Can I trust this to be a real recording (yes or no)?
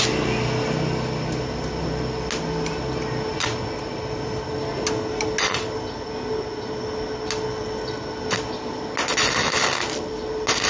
yes